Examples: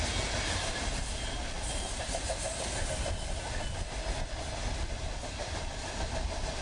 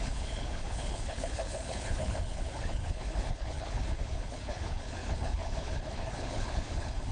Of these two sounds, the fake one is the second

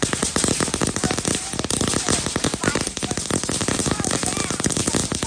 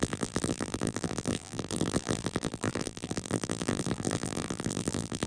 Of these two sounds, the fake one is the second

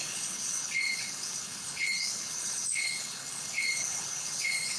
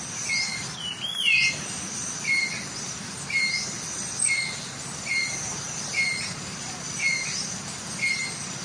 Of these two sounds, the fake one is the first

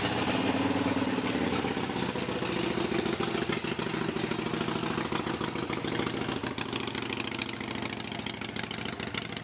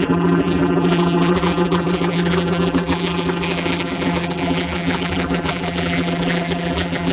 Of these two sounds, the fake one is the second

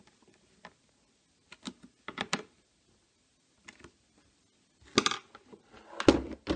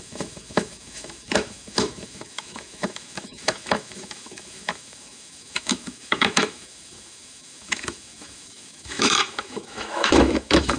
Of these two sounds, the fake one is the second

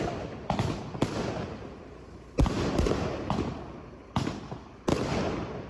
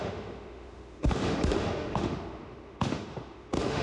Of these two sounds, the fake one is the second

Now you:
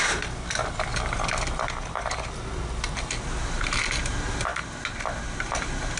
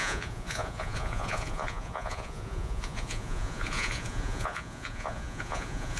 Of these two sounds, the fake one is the second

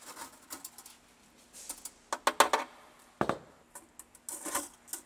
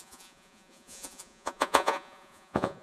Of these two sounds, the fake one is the second